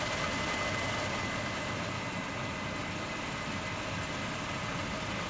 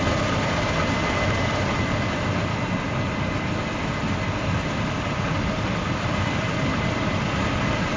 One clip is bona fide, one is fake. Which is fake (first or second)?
second